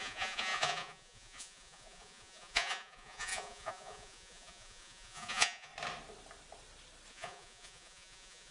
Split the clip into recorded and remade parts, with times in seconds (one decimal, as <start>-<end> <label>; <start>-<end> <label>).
0.0-5.7 remade; 5.7-7.1 recorded; 7.1-8.5 remade